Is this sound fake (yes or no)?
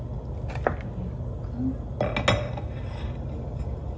no